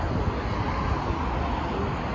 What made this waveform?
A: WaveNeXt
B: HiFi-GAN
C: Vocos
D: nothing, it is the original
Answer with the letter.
D